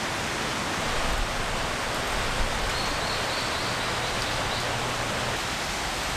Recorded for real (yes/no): yes